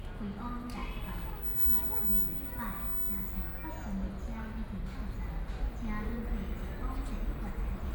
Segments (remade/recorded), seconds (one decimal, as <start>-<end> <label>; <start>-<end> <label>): 0.0-7.9 recorded